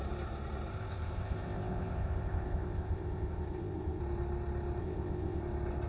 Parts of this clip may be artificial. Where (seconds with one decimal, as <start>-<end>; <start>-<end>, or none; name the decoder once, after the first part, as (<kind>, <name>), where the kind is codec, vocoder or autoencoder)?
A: 0.7-4.0 (codec, ZipCodec); 4.8-5.4